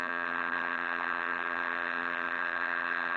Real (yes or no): no